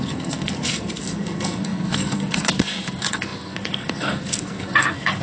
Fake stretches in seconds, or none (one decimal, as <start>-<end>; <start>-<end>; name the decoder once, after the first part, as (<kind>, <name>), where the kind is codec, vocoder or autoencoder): 0.0-5.2 (codec, SNAC)